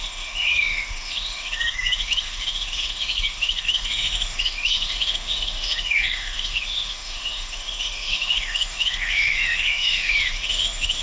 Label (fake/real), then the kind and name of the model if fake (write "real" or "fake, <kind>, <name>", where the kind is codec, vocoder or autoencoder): fake, autoencoder, DAC-VAE